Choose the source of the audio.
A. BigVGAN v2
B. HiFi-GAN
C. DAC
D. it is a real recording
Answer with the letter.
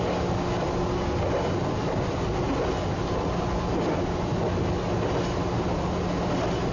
D